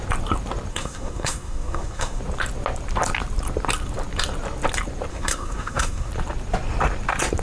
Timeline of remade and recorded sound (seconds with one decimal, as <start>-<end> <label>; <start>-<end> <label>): 0.0-0.7 recorded; 0.7-2.2 remade; 2.2-5.1 recorded; 5.1-6.1 remade; 6.1-7.4 recorded